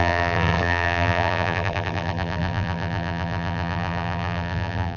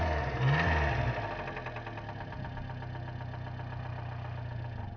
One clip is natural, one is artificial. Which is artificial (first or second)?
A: first